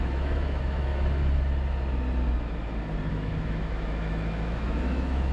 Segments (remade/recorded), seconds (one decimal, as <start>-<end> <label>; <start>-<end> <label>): 0.0-0.9 remade; 0.9-3.1 recorded; 3.1-5.3 remade